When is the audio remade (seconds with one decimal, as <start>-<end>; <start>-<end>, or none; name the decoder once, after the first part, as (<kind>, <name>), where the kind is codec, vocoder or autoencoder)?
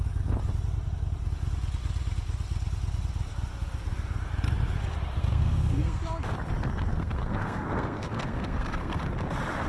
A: 5.2-6.0 (codec, SNAC); 6.9-9.0